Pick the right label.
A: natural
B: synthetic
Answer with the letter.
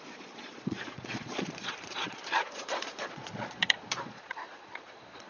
B